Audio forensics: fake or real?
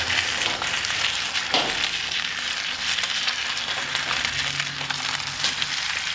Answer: real